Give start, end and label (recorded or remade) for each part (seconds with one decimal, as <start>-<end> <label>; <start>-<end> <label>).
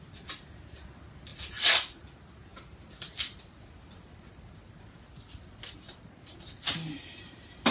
0.0-1.3 recorded; 1.3-2.0 remade; 2.0-7.7 recorded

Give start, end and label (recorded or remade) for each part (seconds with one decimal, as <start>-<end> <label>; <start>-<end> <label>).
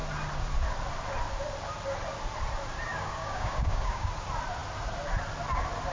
0.0-2.9 recorded; 2.9-4.1 remade; 4.1-5.9 recorded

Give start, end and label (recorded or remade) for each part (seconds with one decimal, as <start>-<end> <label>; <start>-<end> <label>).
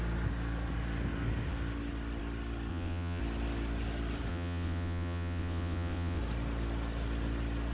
0.0-2.7 recorded; 2.7-3.2 remade; 3.2-4.3 recorded; 4.3-6.2 remade; 6.2-7.7 recorded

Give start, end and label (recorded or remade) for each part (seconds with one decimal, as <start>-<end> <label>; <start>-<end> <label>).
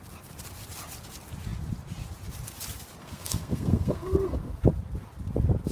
0.0-3.0 recorded; 3.0-4.6 remade; 4.6-5.7 recorded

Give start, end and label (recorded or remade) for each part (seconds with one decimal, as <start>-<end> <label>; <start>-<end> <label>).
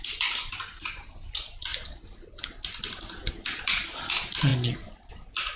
0.0-5.6 recorded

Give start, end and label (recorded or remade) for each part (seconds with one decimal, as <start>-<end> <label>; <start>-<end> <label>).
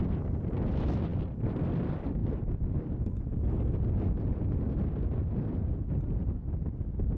0.0-7.2 recorded